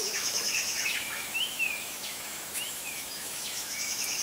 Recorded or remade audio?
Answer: remade